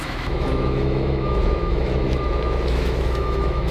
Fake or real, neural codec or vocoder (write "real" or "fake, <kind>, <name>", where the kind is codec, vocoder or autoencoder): fake, autoencoder, DAC-VAE